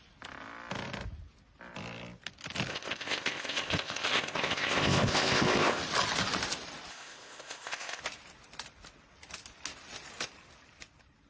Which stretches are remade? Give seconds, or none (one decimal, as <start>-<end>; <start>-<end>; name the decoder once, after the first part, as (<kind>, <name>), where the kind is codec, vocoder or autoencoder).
2.7-5.8 (codec, ZipCodec); 6.9-8.0